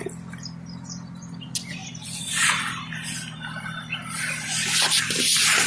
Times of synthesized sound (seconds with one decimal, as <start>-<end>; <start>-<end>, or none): none